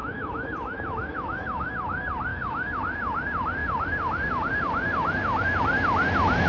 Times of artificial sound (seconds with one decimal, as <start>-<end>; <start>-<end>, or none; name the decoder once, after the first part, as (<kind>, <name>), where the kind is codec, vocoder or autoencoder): 0.0-1.7 (autoencoder, DAC-VAE); 2.3-2.8